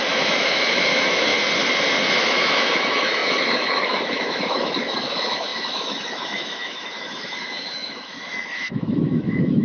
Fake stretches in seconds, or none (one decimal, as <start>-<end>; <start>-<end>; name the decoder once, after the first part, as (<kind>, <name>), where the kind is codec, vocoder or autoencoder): 0.0-1.3 (autoencoder, DAC-VAE); 2.2-9.6